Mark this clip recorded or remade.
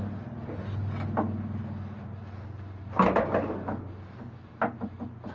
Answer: recorded